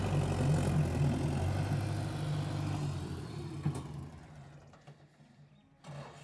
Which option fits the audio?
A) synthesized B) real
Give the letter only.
B